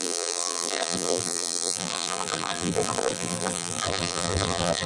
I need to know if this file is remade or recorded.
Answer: remade